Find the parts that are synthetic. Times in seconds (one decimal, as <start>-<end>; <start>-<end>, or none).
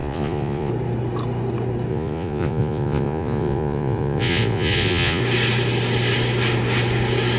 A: 0.0-0.7; 1.9-5.2